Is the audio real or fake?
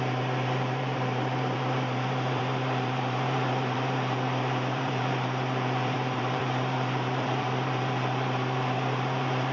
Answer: fake